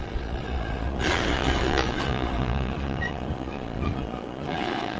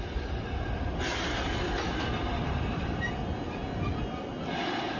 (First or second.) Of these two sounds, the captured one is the second